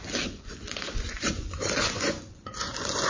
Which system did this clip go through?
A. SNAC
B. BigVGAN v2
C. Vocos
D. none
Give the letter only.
C